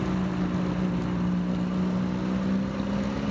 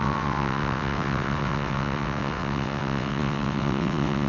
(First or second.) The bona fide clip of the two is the first